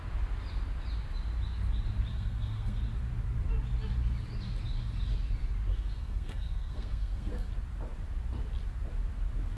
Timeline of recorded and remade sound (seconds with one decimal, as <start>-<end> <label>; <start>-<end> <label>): 0.0-2.1 recorded; 2.1-2.8 remade; 2.8-5.7 recorded; 5.7-7.5 remade; 7.5-9.6 recorded